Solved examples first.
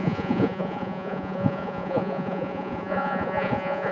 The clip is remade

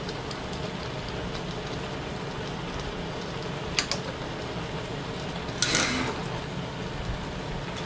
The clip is recorded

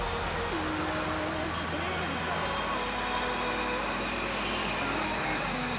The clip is recorded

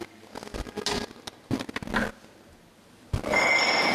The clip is recorded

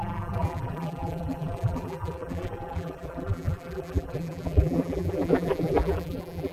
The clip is remade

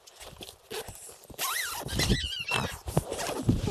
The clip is recorded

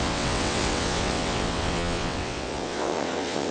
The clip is remade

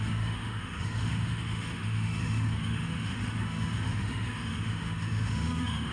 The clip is remade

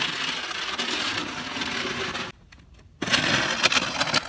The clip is recorded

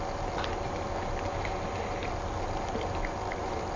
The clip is recorded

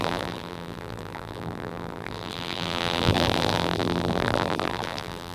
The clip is remade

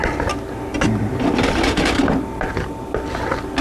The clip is recorded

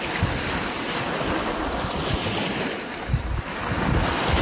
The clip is recorded